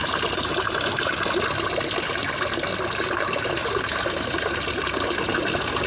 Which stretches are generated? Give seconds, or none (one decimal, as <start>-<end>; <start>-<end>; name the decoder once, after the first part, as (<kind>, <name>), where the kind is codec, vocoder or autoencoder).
0.0-1.1 (vocoder, BigVGAN v2); 3.6-4.1